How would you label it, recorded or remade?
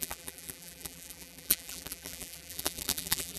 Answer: remade